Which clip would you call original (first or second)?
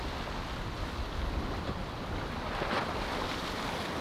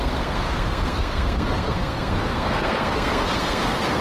first